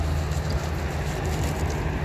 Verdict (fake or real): real